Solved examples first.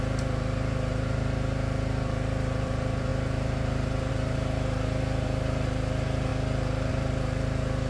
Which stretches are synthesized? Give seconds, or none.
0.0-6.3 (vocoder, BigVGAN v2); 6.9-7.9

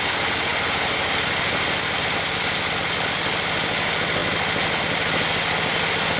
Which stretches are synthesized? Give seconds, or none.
0.5-2.8 (vocoder, BigVGAN v2)

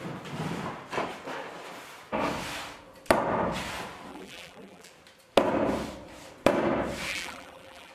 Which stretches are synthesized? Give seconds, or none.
4.1-4.9 (vocoder, BigVGAN v2); 7.1-7.9